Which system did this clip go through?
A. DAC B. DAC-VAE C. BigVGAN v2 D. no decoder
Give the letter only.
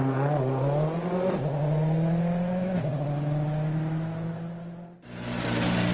D